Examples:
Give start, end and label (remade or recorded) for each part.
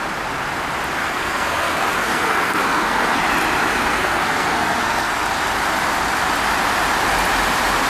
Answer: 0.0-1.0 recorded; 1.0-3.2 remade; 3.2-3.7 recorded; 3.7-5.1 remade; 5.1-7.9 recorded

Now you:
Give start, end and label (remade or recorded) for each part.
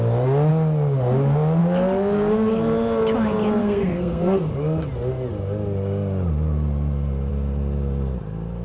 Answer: 0.0-3.6 recorded; 3.6-4.5 remade; 4.5-8.6 recorded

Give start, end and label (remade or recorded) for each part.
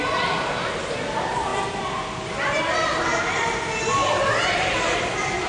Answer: 0.0-5.5 recorded